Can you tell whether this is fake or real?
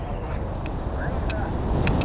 real